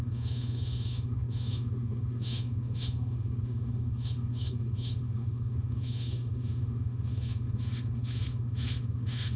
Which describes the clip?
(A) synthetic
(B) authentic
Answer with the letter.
A